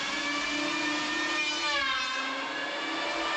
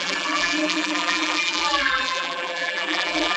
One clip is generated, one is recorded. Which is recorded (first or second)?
first